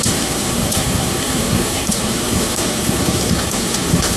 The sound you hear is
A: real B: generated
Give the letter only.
B